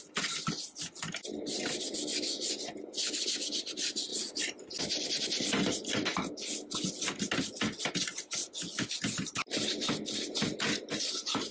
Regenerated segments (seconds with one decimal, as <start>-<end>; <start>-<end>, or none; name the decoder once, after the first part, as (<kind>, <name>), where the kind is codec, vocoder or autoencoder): none